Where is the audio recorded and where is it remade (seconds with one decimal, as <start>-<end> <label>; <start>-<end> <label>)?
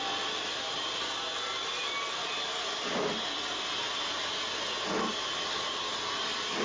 0.0-6.6 recorded